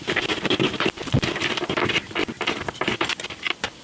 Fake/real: fake